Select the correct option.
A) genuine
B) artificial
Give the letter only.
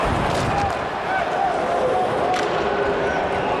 A